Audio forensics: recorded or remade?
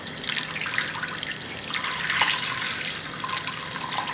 recorded